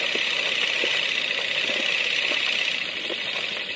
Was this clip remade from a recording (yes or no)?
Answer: no